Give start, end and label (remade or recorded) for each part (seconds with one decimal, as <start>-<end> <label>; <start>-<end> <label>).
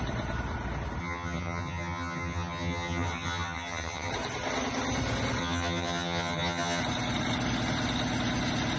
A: 0.0-1.0 recorded; 1.0-4.1 remade; 4.1-5.4 recorded; 5.4-6.8 remade; 6.8-8.8 recorded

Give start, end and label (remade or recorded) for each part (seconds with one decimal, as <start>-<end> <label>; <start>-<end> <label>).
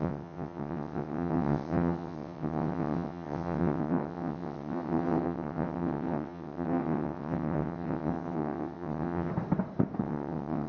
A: 0.0-9.3 remade; 9.3-10.0 recorded; 10.0-10.7 remade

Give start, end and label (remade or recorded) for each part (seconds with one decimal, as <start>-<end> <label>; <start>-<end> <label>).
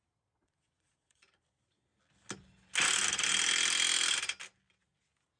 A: 0.0-1.9 remade; 1.9-5.4 recorded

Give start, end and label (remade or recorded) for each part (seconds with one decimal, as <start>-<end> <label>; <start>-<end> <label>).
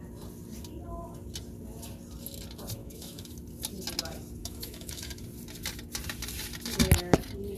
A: 0.0-2.8 recorded; 2.8-3.3 remade; 3.3-4.4 recorded; 4.4-5.2 remade; 5.2-7.6 recorded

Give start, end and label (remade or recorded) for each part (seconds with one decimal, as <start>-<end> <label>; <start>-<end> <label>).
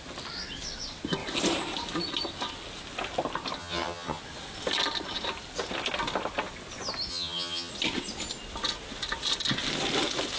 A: 0.0-3.6 recorded; 3.6-4.2 remade; 4.2-7.1 recorded; 7.1-7.7 remade; 7.7-10.4 recorded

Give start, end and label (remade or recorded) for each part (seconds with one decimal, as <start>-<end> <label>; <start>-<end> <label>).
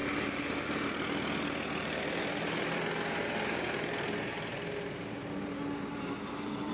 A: 0.0-6.7 recorded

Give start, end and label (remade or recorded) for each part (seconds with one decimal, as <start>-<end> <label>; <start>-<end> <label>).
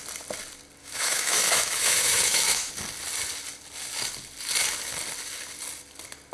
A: 0.0-0.8 recorded; 0.8-2.7 remade; 2.7-6.3 recorded